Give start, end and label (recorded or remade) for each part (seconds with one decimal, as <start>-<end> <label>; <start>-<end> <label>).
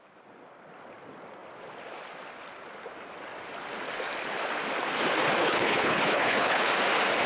0.0-5.4 recorded; 5.4-6.7 remade; 6.7-7.3 recorded